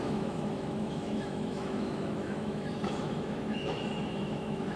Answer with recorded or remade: remade